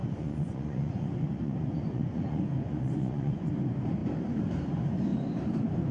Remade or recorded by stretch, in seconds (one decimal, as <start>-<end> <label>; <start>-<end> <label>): 0.0-3.5 remade; 3.5-5.9 recorded